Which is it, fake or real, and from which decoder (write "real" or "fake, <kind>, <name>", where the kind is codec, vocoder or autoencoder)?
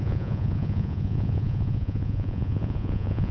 fake, vocoder, Vocos